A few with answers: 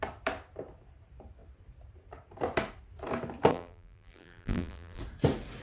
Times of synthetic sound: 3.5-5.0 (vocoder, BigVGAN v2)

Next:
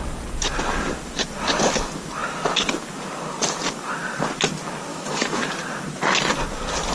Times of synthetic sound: 4.9-5.5 (autoencoder, DAC-VAE)